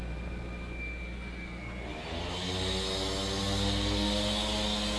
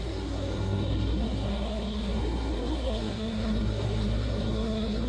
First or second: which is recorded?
first